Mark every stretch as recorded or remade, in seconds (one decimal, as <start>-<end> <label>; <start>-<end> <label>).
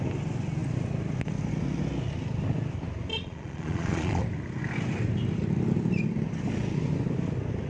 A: 0.0-3.1 recorded; 3.1-4.2 remade; 4.2-7.7 recorded